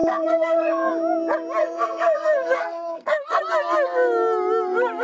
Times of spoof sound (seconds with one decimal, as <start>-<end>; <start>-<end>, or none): 0.0-0.9; 1.6-3.4